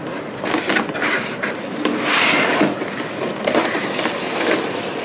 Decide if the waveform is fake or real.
real